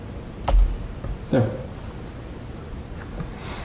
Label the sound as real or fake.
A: real